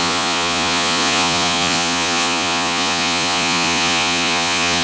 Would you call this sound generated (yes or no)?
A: yes